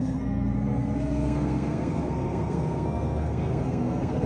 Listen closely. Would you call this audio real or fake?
fake